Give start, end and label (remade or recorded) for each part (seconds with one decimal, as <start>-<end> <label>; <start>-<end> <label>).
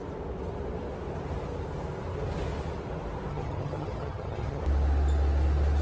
0.0-3.3 recorded; 3.3-4.6 remade; 4.6-5.8 recorded